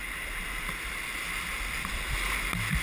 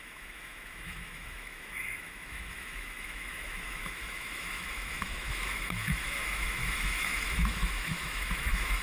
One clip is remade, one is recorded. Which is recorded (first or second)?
first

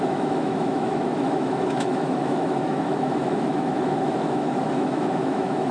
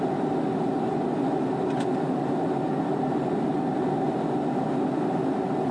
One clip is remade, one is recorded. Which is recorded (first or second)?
second